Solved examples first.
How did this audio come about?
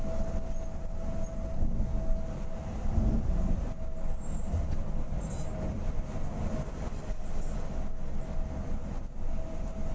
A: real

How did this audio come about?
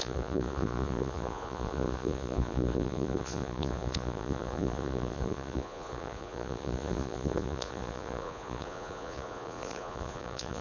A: fake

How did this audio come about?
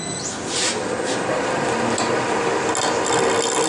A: real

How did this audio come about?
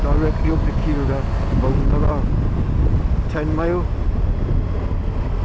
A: real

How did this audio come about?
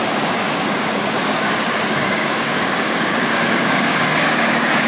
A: fake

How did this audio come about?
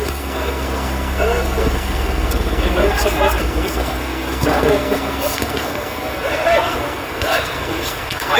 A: fake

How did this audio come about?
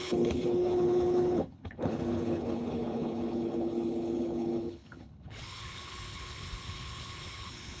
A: fake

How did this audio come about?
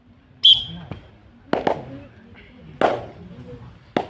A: real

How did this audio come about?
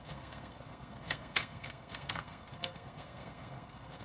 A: fake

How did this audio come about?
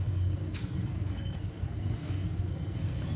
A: fake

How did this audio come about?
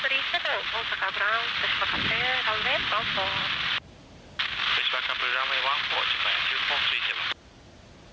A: real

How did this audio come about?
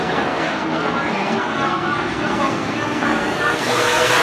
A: fake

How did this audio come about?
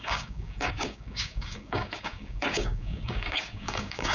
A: fake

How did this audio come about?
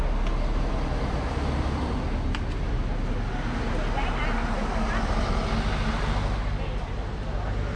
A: real